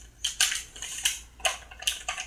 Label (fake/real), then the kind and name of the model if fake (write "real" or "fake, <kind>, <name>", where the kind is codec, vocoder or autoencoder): real